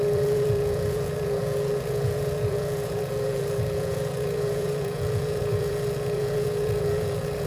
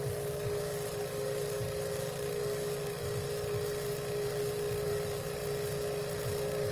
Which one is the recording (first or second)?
second